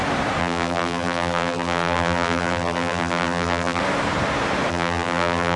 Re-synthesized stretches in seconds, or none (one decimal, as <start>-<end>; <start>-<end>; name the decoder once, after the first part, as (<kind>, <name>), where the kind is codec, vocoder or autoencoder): 0.4-3.8 (vocoder, BigVGAN v2); 4.7-5.6